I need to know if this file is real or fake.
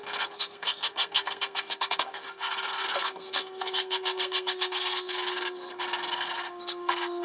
fake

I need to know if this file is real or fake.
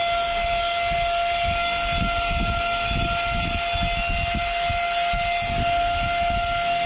real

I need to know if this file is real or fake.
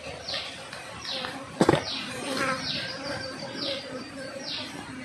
real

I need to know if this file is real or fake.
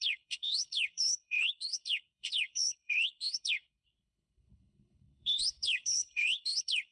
fake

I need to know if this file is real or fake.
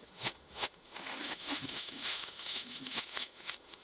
fake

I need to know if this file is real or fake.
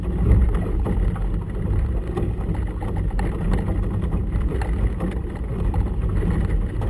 real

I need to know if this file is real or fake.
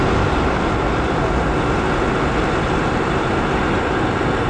real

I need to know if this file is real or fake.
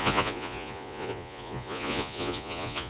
fake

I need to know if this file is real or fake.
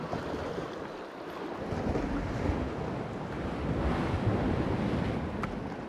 real